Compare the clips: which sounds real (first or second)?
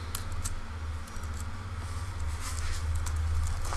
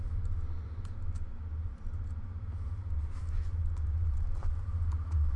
first